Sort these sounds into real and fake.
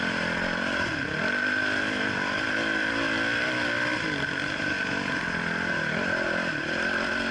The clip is real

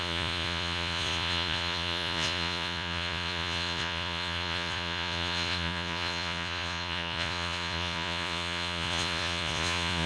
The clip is fake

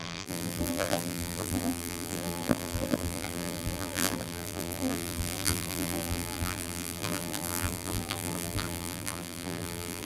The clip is fake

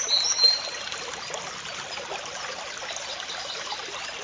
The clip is real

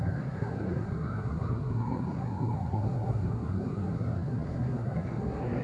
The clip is fake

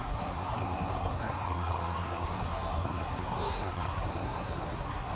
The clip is fake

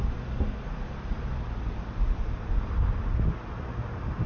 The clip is real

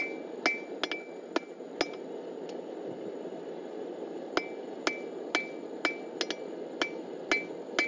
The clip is real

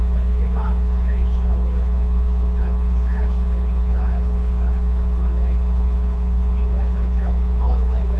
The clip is fake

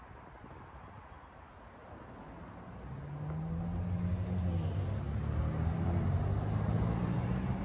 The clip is real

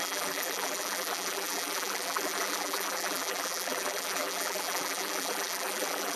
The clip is fake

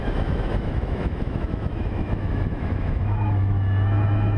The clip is fake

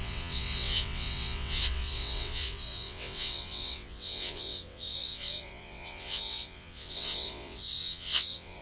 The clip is fake